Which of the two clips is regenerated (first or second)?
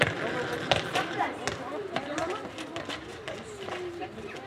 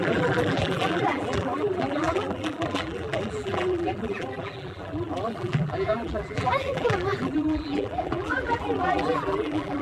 second